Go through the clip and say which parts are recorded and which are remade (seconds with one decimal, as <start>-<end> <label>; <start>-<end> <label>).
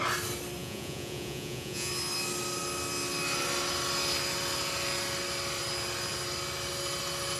0.0-0.6 recorded; 0.6-1.9 remade; 1.9-7.4 recorded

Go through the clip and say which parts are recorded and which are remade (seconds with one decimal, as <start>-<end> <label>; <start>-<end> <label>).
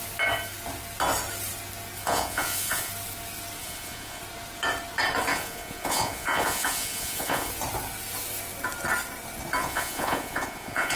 0.0-2.0 recorded; 2.0-2.9 remade; 2.9-3.6 recorded; 3.6-4.2 remade; 4.2-5.3 recorded; 5.3-7.5 remade; 7.5-9.6 recorded; 9.6-11.0 remade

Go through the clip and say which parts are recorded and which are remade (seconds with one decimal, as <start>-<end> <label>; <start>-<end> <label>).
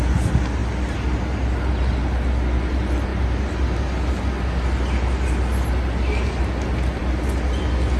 0.0-8.0 recorded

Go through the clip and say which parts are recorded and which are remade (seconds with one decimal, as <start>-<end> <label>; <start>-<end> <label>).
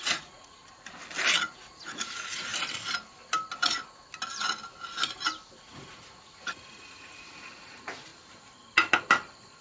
0.0-0.6 remade; 0.6-1.5 recorded; 1.5-2.5 remade; 2.5-5.6 recorded; 5.6-8.1 remade; 8.1-9.6 recorded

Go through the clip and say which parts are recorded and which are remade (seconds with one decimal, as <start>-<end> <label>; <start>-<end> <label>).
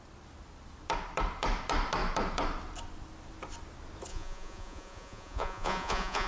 0.0-4.1 recorded; 4.1-6.3 remade